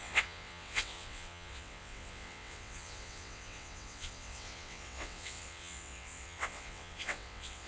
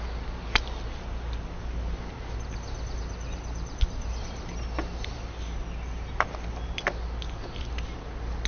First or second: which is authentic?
second